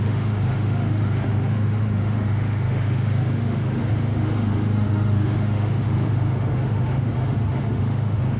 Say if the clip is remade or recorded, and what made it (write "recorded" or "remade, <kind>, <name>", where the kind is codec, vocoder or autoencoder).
remade, autoencoder, DAC-VAE